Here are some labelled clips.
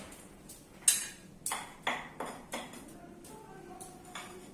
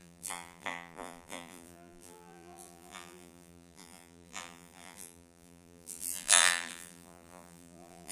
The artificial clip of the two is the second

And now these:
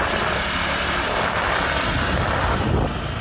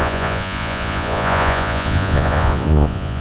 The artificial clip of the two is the second